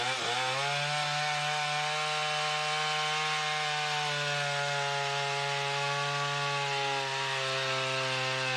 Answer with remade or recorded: recorded